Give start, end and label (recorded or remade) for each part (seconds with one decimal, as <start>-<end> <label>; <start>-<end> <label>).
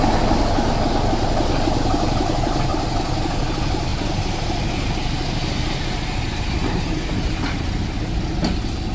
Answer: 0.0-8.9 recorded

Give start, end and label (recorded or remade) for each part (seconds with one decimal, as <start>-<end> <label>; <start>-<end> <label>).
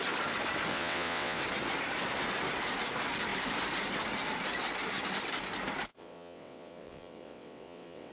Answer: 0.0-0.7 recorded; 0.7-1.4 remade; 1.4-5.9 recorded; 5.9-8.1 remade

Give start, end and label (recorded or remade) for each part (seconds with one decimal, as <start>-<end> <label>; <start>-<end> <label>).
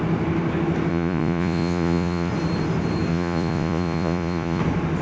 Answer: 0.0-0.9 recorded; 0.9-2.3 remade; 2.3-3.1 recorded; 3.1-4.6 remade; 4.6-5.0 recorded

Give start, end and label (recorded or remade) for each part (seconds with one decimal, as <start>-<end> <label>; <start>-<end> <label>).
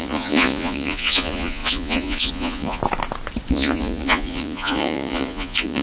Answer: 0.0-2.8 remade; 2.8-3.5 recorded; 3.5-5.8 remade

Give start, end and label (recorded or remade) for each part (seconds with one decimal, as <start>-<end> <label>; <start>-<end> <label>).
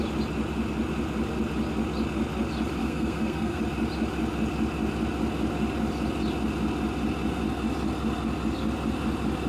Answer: 0.0-2.8 recorded; 2.8-3.6 remade; 3.6-9.5 recorded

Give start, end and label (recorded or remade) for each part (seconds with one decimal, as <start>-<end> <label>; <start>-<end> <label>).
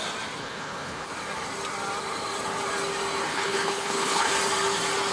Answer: 0.0-0.4 recorded; 0.4-1.1 remade; 1.1-3.3 recorded; 3.3-4.3 remade; 4.3-5.1 recorded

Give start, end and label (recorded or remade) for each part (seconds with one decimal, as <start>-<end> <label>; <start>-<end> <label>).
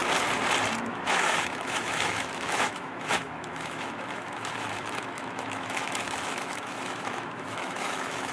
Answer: 0.0-0.9 recorded; 0.9-8.3 remade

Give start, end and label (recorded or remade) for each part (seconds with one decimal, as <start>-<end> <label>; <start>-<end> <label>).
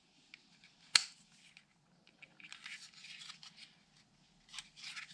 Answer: 0.0-5.1 recorded